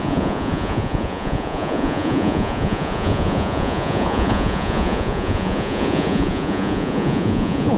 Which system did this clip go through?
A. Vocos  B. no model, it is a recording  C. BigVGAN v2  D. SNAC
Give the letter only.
A